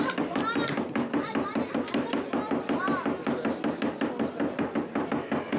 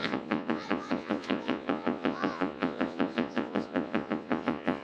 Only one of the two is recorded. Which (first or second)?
first